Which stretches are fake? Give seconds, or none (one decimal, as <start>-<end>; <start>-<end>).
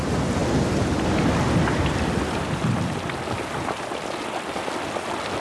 none